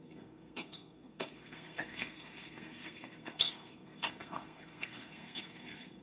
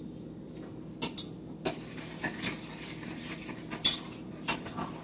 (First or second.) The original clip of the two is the second